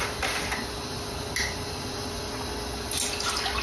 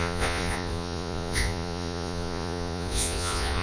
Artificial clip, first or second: second